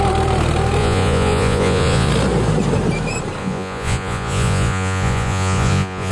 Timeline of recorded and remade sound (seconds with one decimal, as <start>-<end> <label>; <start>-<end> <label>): 0.0-0.8 recorded; 0.8-2.1 remade; 2.1-3.4 recorded; 3.4-6.1 remade